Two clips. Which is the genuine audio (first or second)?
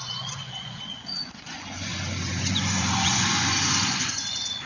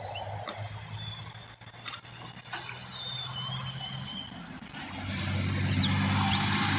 second